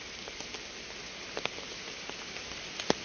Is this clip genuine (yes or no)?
yes